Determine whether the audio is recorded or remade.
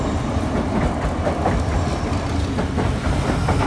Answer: recorded